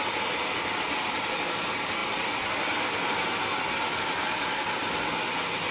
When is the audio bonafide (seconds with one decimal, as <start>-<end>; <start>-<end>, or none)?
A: 0.0-5.7